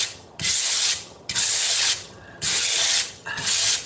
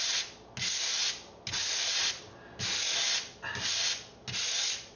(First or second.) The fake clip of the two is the first